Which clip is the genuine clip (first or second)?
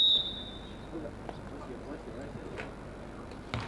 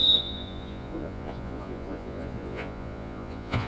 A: first